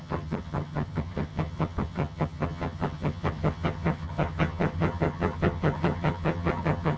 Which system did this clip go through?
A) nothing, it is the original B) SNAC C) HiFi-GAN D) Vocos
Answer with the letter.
C